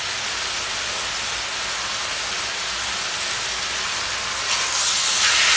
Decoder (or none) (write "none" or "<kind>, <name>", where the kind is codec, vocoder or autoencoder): none